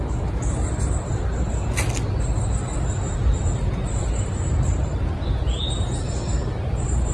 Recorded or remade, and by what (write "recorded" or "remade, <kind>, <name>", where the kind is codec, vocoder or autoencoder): recorded